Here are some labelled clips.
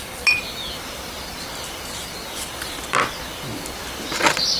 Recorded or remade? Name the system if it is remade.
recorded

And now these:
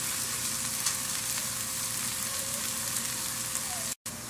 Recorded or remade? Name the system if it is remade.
recorded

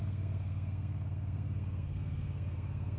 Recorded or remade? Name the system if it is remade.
remade, codec, SNAC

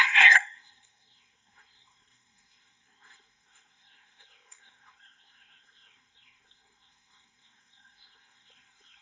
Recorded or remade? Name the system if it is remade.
remade, codec, SNAC